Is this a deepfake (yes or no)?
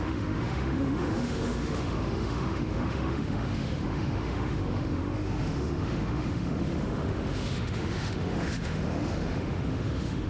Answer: yes